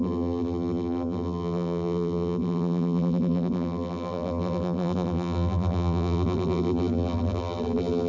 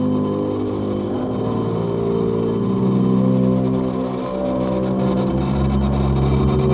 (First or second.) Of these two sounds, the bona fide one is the second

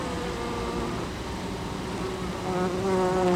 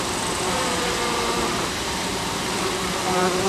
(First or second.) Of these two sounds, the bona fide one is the first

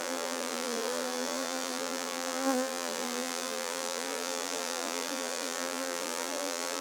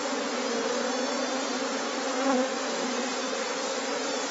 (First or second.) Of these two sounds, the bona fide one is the second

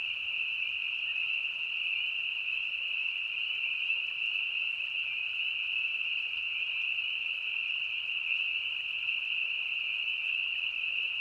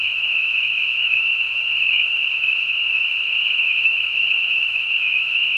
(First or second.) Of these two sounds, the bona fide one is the first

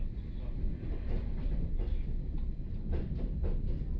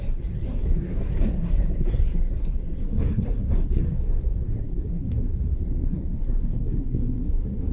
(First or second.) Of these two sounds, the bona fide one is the first